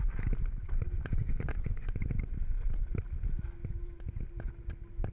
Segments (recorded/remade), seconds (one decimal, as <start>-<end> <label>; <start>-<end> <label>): 0.0-1.5 recorded; 1.5-2.0 remade; 2.0-5.1 recorded